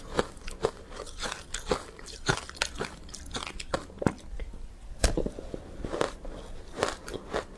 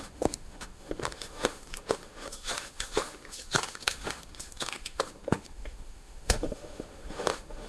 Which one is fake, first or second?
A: second